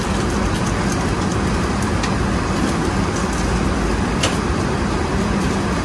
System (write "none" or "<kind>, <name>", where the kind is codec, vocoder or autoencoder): none